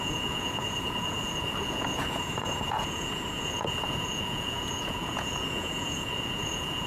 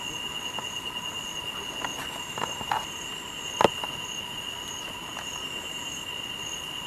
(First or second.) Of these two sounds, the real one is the second